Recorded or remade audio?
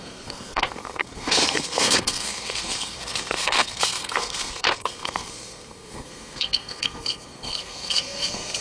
remade